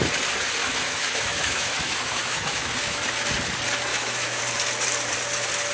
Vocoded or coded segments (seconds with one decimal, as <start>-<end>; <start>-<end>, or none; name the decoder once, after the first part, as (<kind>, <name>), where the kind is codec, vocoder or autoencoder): 0.6-3.0 (autoencoder, DAC-VAE); 3.9-4.4